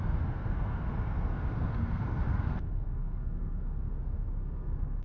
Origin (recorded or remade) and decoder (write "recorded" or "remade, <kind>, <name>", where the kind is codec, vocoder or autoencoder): remade, codec, SNAC